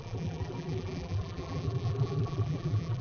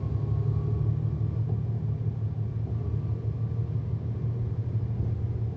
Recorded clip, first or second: second